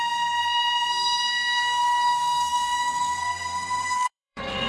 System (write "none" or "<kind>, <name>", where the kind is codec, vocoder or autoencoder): codec, SNAC